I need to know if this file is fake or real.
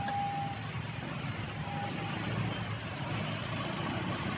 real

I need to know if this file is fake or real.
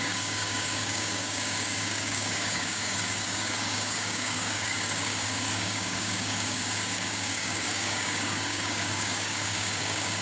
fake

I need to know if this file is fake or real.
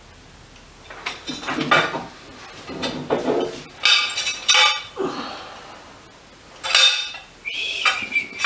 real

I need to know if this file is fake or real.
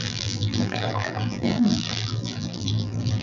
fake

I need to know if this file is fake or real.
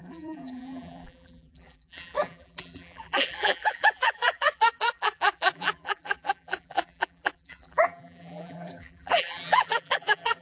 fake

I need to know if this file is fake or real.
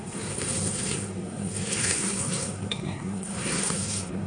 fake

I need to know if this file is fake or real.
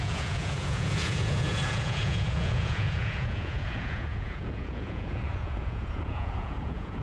fake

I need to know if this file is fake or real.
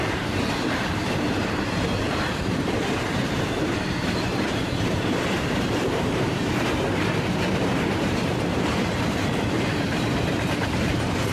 fake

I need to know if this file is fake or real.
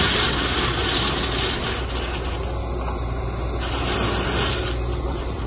real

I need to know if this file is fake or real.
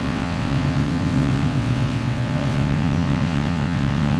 fake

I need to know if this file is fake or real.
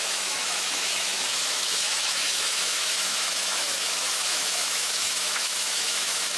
fake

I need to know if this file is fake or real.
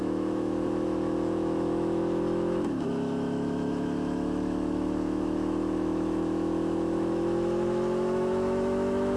fake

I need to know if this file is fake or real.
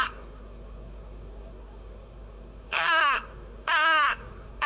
fake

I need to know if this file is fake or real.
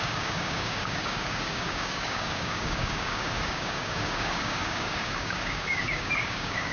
fake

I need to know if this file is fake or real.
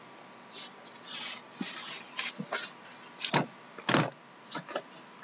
real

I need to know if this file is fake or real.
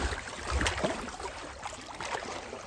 fake